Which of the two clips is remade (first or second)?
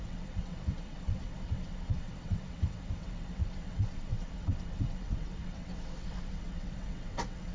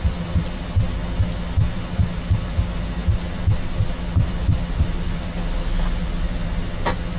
first